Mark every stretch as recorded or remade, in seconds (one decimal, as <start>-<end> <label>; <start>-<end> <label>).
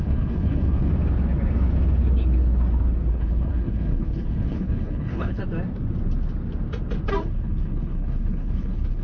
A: 0.0-0.9 remade; 0.9-3.1 recorded; 3.1-5.4 remade; 5.4-7.2 recorded; 7.2-9.0 remade